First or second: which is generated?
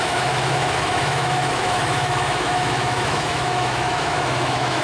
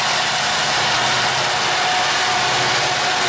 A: first